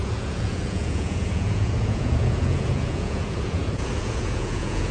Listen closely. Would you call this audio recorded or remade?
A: remade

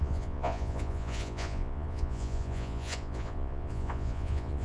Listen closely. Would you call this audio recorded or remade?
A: remade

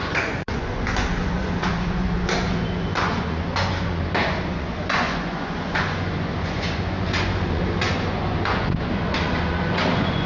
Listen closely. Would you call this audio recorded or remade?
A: remade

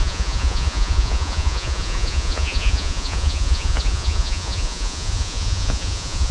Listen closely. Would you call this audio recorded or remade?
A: remade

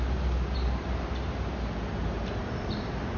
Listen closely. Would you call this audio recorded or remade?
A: recorded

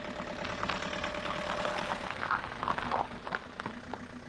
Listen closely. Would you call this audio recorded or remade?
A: recorded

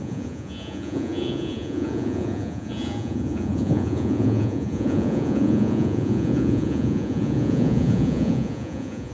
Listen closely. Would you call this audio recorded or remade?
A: remade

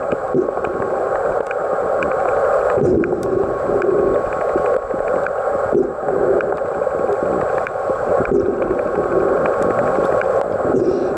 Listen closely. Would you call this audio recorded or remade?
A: recorded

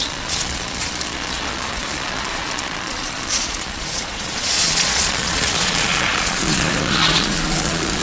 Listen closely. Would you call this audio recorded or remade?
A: remade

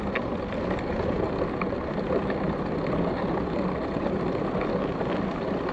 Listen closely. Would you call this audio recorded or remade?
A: recorded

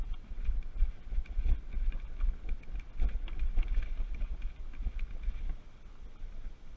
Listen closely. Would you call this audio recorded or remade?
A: recorded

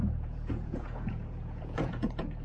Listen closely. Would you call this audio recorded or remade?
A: remade